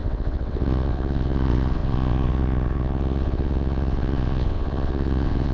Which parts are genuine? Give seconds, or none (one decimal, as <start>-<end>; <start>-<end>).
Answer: none